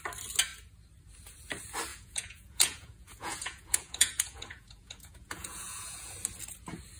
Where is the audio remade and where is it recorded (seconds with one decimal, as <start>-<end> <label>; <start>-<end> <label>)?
0.0-1.9 recorded; 1.9-6.1 remade; 6.1-7.0 recorded